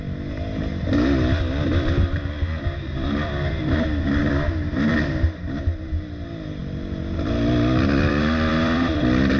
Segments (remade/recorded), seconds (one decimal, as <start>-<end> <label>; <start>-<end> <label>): 0.0-8.5 recorded; 8.5-9.4 remade